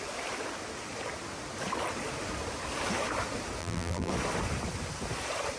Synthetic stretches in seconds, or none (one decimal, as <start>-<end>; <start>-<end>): 3.6-4.1